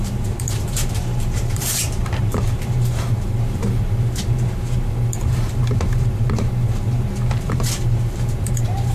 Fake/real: fake